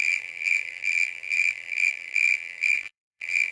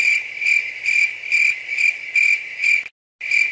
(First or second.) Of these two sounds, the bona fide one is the second